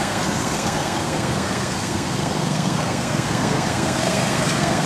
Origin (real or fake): fake